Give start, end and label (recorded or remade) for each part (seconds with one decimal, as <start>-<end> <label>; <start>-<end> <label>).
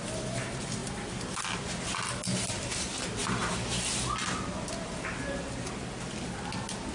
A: 0.0-6.9 recorded